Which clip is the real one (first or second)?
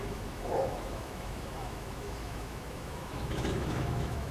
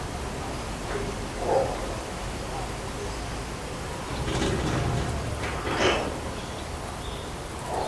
second